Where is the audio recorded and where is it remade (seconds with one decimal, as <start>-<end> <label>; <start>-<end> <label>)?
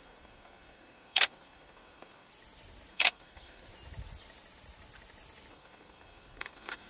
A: 0.0-2.3 remade; 2.3-2.9 recorded; 2.9-3.7 remade; 3.7-5.5 recorded; 5.5-6.9 remade